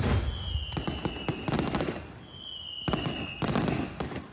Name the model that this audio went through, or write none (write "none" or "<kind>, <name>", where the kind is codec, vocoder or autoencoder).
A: none